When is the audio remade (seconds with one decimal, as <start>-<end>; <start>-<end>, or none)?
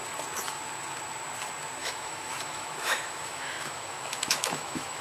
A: 1.8-5.0